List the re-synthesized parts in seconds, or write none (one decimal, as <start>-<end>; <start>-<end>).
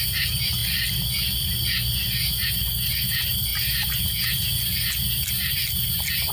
none